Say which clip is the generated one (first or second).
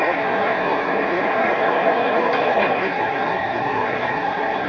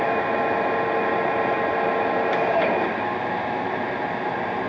first